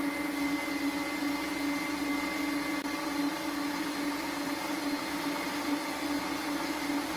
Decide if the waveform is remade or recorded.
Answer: recorded